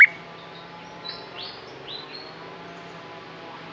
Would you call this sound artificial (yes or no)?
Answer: no